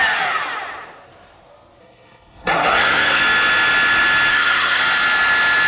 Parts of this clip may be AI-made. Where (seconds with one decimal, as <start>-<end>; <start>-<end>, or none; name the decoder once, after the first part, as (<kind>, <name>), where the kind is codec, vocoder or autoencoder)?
1.8-3.2 (codec, SNAC); 4.3-4.8